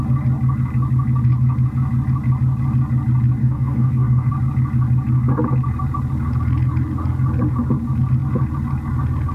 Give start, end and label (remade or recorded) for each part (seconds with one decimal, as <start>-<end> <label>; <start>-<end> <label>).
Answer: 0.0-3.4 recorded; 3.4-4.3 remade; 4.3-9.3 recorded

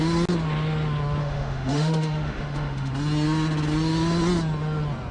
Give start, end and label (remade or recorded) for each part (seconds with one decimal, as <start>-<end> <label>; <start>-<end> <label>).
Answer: 0.0-1.2 recorded; 1.2-2.9 remade; 2.9-5.1 recorded

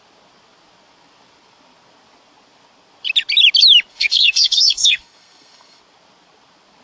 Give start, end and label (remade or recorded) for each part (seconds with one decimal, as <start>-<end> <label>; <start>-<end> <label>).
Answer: 0.0-3.9 recorded; 3.9-5.8 remade; 5.8-6.8 recorded

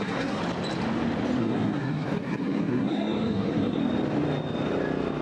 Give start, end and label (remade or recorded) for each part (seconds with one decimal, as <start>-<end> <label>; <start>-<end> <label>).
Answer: 0.0-0.4 remade; 0.4-1.4 recorded; 1.4-3.8 remade; 3.8-5.2 recorded

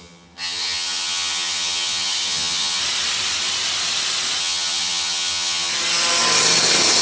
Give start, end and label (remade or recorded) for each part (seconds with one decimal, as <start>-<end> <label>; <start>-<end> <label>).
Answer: 0.0-2.8 remade; 2.8-4.4 recorded; 4.4-5.7 remade; 5.7-7.0 recorded

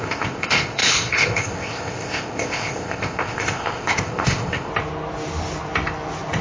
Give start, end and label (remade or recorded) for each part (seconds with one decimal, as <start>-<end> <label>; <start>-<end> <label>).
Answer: 0.0-4.7 remade; 4.7-6.4 recorded